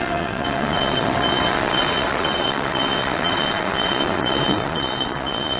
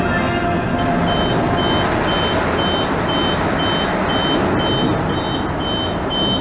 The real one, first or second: second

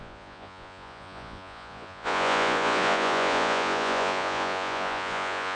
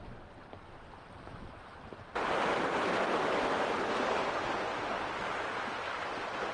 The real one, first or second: second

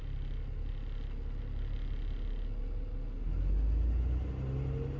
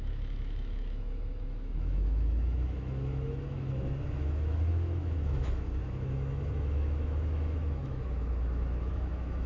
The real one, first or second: first